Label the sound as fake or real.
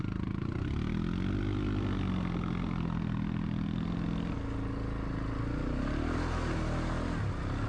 real